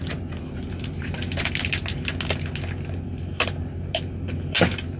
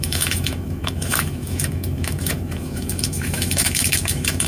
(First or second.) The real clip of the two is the first